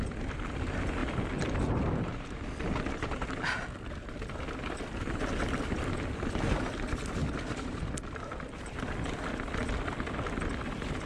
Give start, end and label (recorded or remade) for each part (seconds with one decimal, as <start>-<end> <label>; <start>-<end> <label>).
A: 0.0-7.2 recorded; 7.2-10.4 remade; 10.4-11.1 recorded